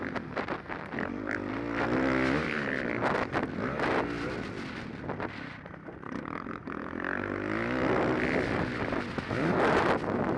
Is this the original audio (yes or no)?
yes